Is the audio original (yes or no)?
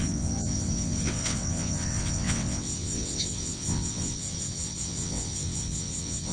no